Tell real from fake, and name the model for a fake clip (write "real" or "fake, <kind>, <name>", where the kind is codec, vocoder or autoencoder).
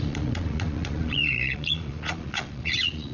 fake, vocoder, Vocos